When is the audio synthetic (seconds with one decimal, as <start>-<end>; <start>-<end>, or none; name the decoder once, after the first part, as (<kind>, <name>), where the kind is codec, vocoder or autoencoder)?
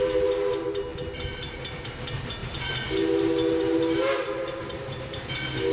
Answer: none